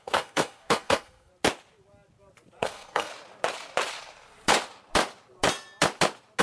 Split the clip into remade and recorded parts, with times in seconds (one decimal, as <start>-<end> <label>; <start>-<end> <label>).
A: 0.0-1.3 remade; 1.3-2.6 recorded; 2.6-3.1 remade; 3.1-6.4 recorded

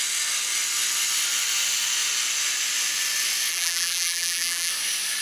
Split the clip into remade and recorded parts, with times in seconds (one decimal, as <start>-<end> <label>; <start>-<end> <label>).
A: 0.0-3.5 recorded; 3.5-4.7 remade; 4.7-5.2 recorded

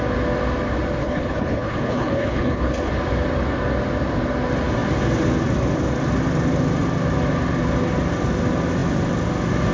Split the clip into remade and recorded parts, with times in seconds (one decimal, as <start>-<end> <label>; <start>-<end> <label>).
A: 0.0-1.0 recorded; 1.0-2.9 remade; 2.9-9.7 recorded

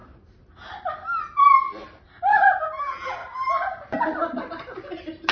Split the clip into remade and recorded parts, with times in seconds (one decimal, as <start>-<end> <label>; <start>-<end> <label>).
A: 0.0-2.8 recorded; 2.8-3.2 remade; 3.2-5.3 recorded

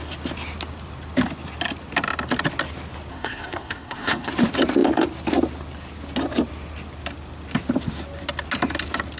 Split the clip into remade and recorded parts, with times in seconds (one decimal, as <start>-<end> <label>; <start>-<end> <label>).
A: 0.0-3.1 recorded; 3.1-4.3 remade; 4.3-9.2 recorded

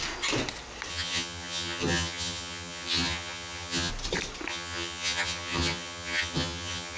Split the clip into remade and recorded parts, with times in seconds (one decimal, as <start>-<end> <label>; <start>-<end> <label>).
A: 0.0-0.9 recorded; 0.9-3.9 remade; 3.9-4.5 recorded; 4.5-7.0 remade

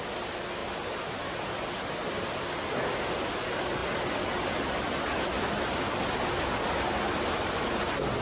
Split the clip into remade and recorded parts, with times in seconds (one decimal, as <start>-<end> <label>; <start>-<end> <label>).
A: 0.0-8.2 recorded